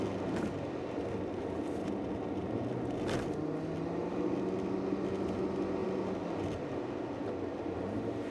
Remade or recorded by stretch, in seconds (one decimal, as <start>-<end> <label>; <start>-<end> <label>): 0.0-8.3 recorded